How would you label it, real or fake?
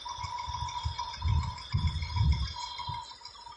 real